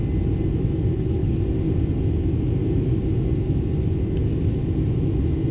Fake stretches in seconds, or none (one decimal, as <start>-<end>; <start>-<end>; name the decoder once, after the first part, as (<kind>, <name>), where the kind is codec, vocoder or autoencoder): 0.9-1.4 (codec, HILCodec)